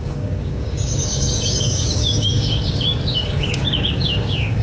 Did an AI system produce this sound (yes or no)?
yes